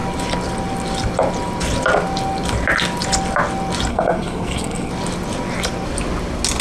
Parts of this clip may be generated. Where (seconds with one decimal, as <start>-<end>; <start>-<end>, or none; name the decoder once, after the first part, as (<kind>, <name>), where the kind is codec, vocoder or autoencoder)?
3.9-4.9 (codec, SNAC)